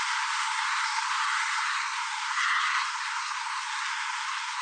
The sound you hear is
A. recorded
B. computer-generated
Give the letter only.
B